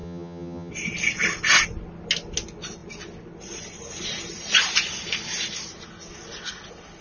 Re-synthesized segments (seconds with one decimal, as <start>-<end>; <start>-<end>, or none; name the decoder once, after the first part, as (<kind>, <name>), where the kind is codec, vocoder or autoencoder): 0.0-0.7 (vocoder, HiFi-GAN)